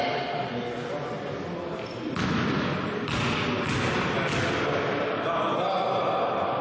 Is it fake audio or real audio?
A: real